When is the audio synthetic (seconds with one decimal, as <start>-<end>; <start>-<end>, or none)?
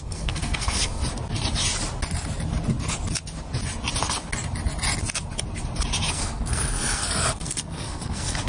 0.0-1.0; 6.1-8.5